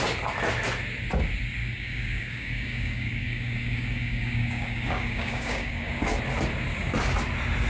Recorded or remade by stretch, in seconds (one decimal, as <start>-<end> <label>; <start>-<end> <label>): 0.0-1.6 recorded; 1.6-6.2 remade; 6.2-7.7 recorded